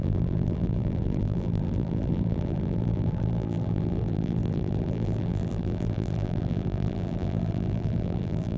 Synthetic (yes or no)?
yes